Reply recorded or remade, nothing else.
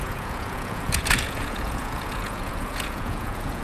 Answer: remade